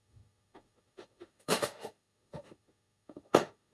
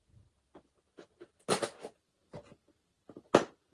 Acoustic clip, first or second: second